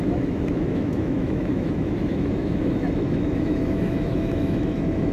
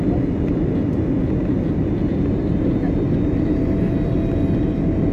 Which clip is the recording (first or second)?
second